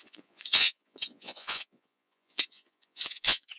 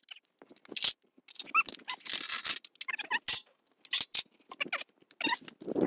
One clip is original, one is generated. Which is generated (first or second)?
first